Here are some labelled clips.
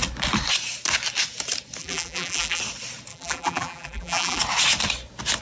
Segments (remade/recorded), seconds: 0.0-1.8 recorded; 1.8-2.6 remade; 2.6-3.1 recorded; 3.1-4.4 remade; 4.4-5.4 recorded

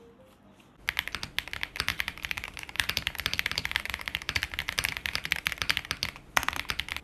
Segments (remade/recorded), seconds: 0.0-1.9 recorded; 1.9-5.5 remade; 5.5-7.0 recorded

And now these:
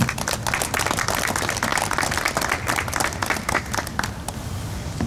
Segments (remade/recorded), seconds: 0.0-5.1 recorded

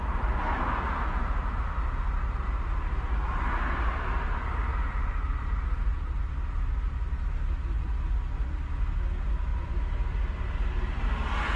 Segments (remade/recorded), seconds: 0.0-4.7 recorded; 4.7-6.2 remade; 6.2-11.6 recorded

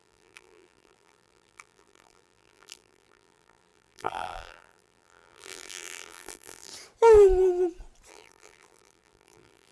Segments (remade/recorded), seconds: 0.0-6.7 remade; 6.7-8.1 recorded; 8.1-9.7 remade

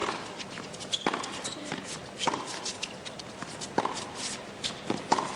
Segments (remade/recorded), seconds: 0.0-0.5 recorded; 0.5-2.0 remade; 2.0-5.4 recorded

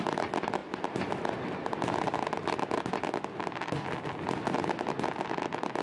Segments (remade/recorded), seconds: 0.0-5.8 recorded